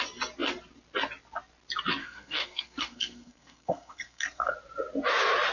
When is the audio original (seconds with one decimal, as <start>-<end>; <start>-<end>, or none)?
0.0-2.0; 4.5-5.5